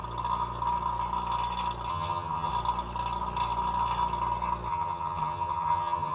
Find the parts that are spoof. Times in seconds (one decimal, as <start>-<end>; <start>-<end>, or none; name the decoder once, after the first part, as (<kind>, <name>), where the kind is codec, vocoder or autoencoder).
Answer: 1.9-2.5 (vocoder, HiFi-GAN); 4.7-6.1